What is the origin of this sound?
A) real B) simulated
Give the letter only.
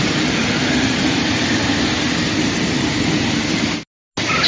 A